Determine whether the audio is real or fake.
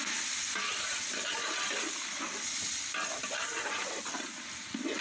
real